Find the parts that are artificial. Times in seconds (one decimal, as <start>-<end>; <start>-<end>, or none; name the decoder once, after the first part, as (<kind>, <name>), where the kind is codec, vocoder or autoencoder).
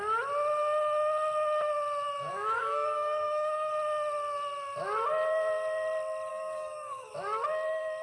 2.3-3.7 (codec, DAC); 6.3-7.1